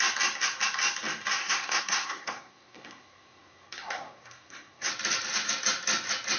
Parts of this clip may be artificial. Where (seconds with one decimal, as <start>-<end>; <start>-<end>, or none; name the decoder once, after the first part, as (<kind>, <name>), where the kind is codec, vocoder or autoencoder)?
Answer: 1.4-4.9 (codec, SNAC)